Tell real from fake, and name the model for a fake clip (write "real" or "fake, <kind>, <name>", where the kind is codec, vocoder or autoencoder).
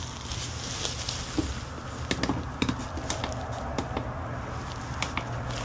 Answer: real